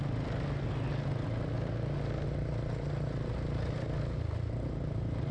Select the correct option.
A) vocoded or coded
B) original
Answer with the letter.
B